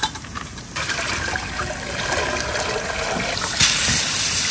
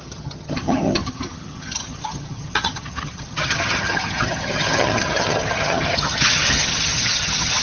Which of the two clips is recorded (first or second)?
first